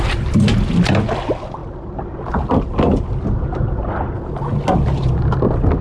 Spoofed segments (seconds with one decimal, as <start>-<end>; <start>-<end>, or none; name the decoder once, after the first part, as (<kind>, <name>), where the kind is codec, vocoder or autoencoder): none